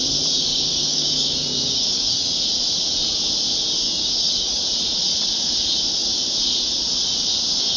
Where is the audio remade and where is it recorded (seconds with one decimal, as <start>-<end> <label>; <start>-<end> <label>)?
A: 0.0-0.5 recorded; 0.5-2.4 remade; 2.4-3.8 recorded; 3.8-4.6 remade; 4.6-7.8 recorded